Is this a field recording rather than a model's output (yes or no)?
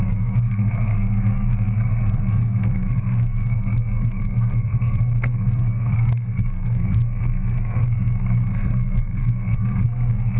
no